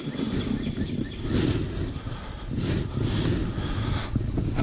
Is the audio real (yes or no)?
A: yes